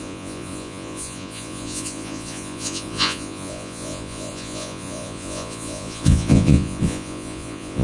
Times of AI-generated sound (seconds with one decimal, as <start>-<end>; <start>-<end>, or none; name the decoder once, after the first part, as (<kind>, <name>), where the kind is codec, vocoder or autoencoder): 0.0-7.8 (vocoder, Vocos)